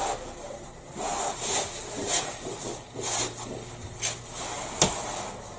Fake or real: real